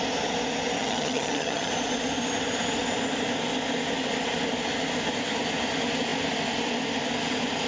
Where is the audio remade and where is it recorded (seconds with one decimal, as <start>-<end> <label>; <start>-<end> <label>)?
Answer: 0.0-0.8 recorded; 0.8-1.7 remade; 1.7-7.7 recorded